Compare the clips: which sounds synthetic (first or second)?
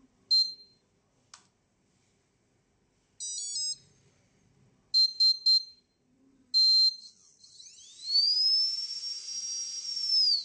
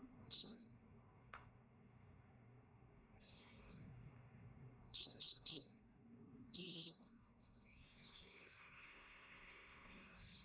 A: second